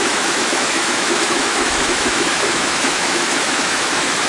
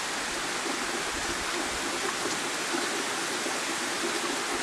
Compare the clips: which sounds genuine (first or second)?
second